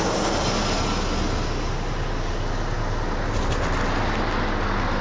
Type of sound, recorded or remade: recorded